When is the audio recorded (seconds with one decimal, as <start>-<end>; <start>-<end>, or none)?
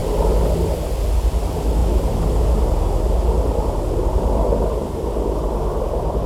0.0-6.3